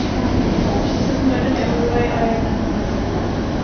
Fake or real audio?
real